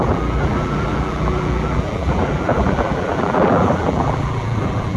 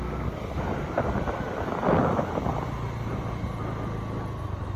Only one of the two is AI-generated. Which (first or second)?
first